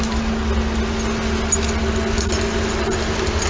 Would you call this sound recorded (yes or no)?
yes